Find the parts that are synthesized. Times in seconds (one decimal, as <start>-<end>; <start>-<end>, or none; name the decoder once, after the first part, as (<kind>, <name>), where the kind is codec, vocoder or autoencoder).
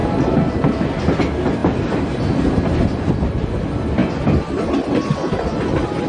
none